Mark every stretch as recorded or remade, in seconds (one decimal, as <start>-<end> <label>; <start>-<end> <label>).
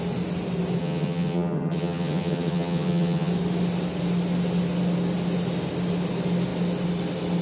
0.0-0.8 recorded; 0.8-3.3 remade; 3.3-7.4 recorded